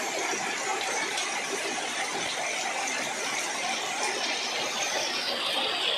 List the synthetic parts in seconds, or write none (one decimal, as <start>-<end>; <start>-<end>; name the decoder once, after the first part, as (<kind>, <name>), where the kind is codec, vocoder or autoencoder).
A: 0.7-2.4 (vocoder, BigVGAN v2)

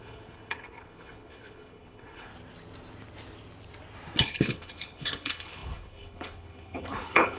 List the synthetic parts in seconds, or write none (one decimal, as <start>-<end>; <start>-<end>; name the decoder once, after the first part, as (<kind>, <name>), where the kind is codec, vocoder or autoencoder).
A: 0.0-2.3 (codec, HILCodec); 4.2-7.4

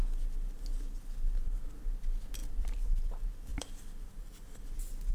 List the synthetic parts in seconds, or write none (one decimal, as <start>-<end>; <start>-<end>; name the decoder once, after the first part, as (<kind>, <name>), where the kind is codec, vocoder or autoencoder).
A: 2.4-3.1 (vocoder, BigVGAN v2); 3.5-4.1

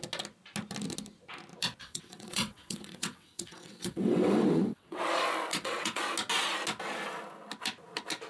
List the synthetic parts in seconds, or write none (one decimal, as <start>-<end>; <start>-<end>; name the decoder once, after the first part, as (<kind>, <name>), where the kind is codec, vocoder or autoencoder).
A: 1.8-5.0 (vocoder, WaveNeXt); 5.5-6.0

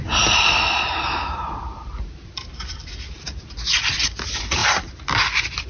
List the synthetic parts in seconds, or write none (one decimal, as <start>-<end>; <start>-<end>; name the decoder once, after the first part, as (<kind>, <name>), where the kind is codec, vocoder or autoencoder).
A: 0.0-3.4 (vocoder, BigVGAN v2)

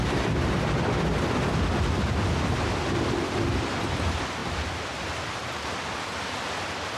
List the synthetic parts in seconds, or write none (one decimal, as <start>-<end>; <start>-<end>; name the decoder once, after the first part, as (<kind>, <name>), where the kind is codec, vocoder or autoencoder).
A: 4.4-6.0 (vocoder, BigVGAN v2)